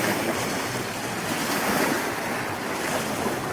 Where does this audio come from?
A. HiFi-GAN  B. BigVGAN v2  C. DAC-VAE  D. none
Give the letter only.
D